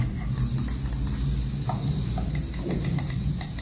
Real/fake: real